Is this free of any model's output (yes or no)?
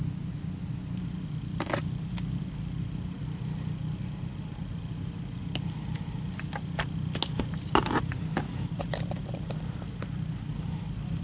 yes